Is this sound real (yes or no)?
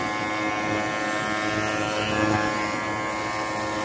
yes